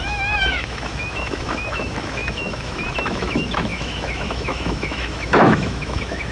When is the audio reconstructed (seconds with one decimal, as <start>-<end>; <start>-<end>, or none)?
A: 0.0-6.3